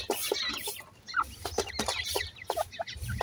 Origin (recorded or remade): recorded